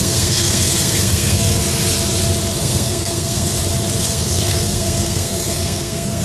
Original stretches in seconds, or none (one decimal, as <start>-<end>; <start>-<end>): 1.6-2.6; 3.5-4.0